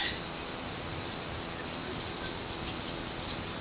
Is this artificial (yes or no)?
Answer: no